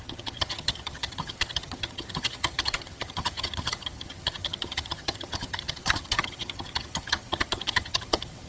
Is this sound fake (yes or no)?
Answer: yes